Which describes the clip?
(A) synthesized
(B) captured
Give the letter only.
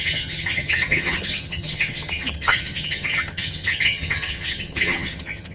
A